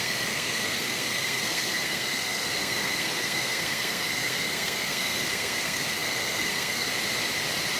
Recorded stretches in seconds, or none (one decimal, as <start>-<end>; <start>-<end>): 6.9-7.8